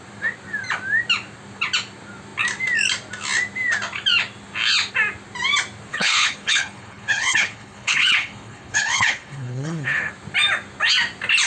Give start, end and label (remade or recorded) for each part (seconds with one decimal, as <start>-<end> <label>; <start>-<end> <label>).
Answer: 0.0-5.9 recorded; 5.9-10.1 remade; 10.1-11.5 recorded